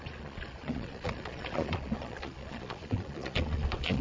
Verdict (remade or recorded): remade